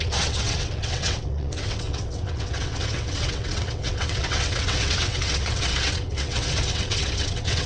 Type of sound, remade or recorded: remade